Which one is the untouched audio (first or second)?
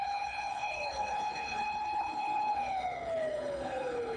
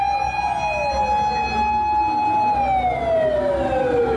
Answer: second